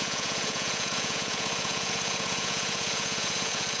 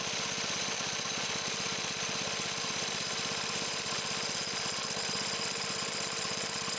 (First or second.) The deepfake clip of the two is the first